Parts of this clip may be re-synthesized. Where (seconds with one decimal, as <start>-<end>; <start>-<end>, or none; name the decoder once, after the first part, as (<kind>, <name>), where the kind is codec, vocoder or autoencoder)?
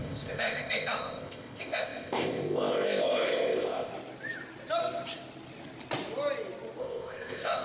0.0-3.9 (codec, ZipCodec); 6.8-7.6